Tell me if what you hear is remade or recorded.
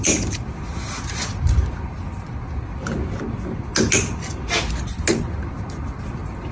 recorded